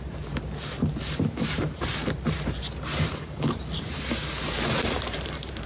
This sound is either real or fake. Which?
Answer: fake